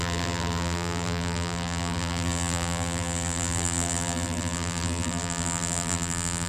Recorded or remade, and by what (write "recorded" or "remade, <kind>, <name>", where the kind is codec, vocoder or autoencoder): remade, vocoder, BigVGAN v2